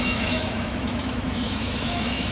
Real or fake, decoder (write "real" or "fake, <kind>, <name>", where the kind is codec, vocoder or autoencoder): fake, autoencoder, DAC-VAE